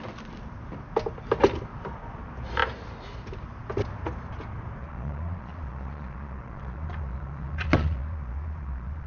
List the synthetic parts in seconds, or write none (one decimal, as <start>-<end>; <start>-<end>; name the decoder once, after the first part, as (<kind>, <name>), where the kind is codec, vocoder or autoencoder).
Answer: 4.8-9.1 (vocoder, Vocos)